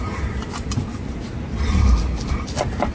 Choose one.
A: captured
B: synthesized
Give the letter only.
A